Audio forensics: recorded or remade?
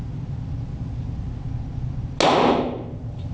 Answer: recorded